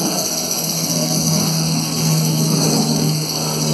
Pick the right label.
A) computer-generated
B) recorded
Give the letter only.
A